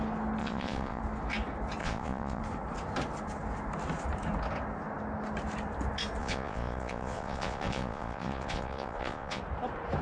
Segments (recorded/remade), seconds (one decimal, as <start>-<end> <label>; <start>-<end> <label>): 0.0-0.4 recorded; 0.4-1.0 remade; 1.0-1.8 recorded; 1.8-2.4 remade; 2.4-6.2 recorded; 6.2-9.4 remade; 9.4-10.0 recorded